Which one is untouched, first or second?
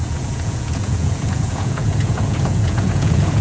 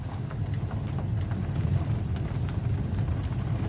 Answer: second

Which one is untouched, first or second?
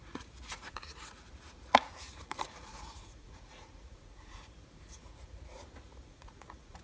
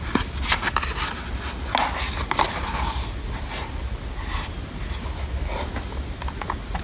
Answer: second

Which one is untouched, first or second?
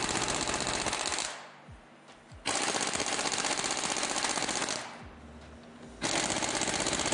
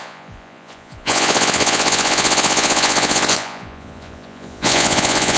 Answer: first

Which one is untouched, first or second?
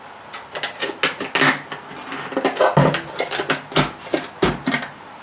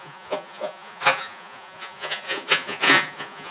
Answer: first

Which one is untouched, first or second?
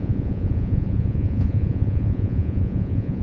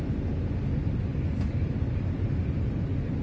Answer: second